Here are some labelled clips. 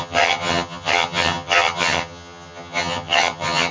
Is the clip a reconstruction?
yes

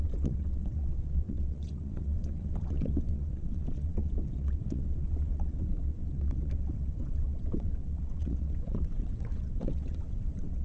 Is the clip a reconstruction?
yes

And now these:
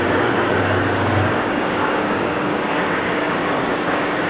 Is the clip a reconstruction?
yes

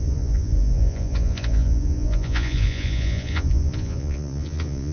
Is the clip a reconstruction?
yes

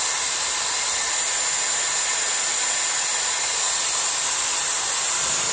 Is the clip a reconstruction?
no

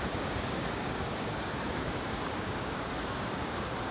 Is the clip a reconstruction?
yes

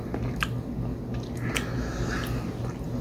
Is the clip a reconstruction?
no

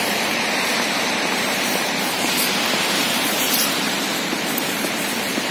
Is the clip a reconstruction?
yes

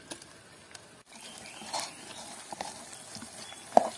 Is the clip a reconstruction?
no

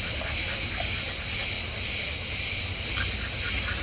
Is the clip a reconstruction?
no